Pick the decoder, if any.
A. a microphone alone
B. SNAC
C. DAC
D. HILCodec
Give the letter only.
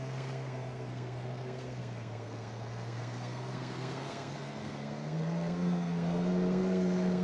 B